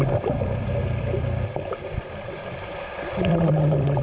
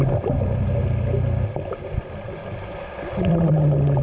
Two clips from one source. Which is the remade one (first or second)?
first